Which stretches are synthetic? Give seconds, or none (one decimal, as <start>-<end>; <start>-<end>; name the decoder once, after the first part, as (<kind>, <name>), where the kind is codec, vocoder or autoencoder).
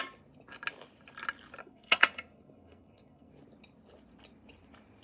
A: 1.6-3.3 (codec, SNAC)